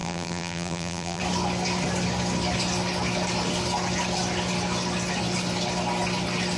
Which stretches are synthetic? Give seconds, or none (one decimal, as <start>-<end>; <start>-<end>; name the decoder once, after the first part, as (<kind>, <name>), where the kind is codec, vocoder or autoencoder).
0.0-1.2 (vocoder, BigVGAN v2)